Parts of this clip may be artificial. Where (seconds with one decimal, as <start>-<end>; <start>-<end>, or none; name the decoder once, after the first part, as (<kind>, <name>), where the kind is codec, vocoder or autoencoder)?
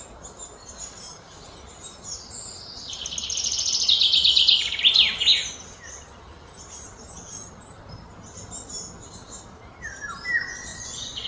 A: 10.7-11.3 (vocoder, Vocos)